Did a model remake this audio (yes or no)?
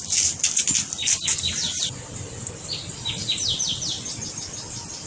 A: no